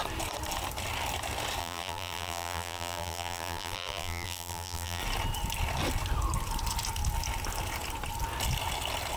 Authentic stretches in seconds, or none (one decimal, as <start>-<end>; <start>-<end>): 0.0-1.6; 5.0-9.2